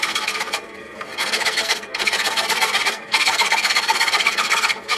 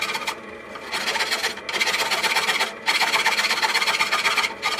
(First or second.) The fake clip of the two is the first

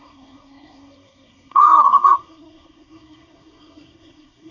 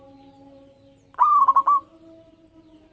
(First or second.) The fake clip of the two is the first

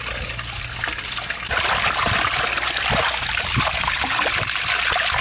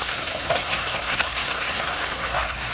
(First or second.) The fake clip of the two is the second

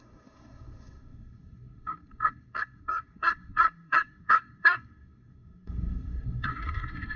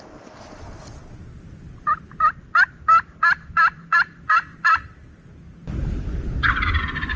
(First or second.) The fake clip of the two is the first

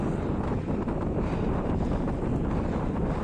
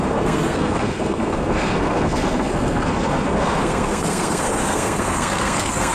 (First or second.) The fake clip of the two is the second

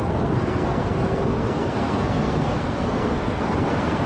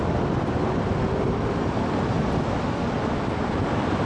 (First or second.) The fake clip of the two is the first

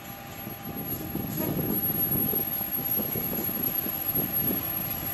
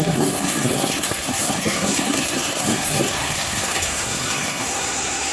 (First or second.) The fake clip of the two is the second